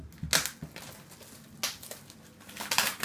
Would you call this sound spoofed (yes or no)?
no